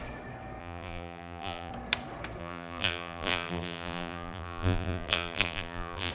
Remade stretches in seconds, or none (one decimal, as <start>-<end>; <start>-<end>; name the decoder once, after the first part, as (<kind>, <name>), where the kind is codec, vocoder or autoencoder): 0.6-1.7 (vocoder, BigVGAN v2); 2.4-6.1